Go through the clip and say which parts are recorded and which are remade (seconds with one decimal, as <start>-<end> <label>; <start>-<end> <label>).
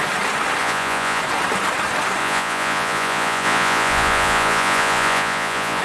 0.0-0.6 recorded; 0.6-1.2 remade; 1.2-2.2 recorded; 2.2-5.8 remade